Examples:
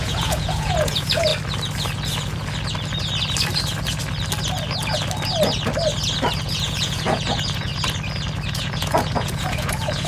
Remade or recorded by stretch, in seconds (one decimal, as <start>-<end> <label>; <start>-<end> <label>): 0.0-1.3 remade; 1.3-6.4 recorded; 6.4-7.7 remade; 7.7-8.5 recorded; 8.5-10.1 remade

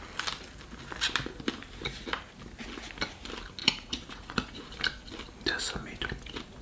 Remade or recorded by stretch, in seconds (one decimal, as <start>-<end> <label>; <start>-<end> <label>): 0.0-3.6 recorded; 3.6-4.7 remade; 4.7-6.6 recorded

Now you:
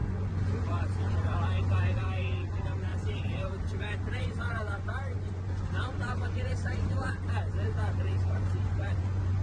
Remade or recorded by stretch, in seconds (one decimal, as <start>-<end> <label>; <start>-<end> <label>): 0.0-9.4 remade

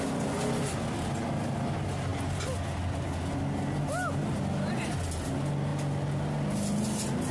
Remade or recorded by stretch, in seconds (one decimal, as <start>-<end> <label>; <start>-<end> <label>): 0.0-7.3 recorded

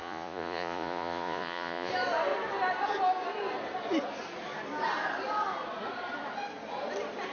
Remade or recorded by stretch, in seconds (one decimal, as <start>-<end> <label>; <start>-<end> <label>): 0.0-1.9 remade; 1.9-7.3 recorded